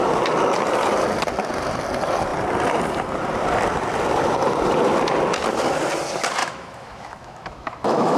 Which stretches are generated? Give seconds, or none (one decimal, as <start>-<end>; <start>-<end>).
6.4-8.2